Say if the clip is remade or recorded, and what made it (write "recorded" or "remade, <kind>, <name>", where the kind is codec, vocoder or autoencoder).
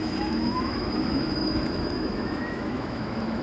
remade, autoencoder, DAC-VAE